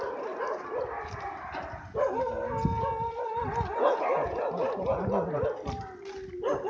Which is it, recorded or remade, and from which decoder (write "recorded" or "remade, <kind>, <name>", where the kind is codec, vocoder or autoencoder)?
recorded